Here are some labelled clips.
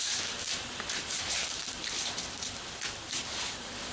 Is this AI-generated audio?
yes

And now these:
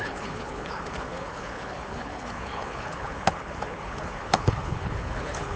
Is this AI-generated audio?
yes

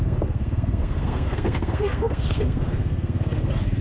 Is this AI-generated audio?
yes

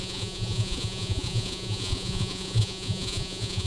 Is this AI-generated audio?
yes